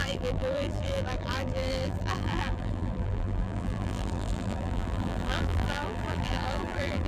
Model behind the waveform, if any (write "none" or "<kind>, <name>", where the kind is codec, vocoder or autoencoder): vocoder, BigVGAN v2